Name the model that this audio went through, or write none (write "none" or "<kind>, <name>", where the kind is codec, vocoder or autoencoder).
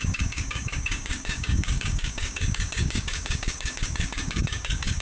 codec, DAC